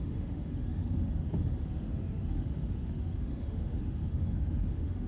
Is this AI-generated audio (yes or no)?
yes